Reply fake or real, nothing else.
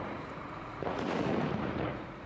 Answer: fake